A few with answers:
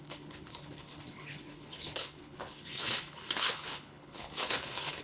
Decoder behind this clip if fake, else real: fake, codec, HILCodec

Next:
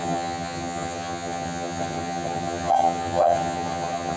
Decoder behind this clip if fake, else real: fake, vocoder, HiFi-GAN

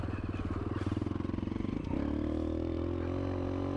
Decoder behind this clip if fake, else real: real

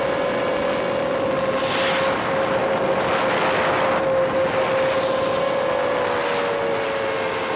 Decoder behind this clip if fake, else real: real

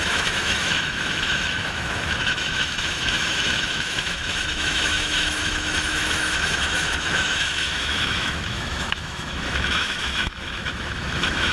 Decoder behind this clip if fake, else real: fake, autoencoder, DAC-VAE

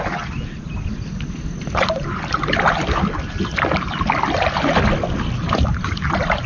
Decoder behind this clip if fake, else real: real